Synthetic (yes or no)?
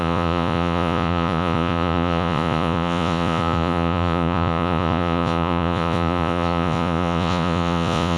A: yes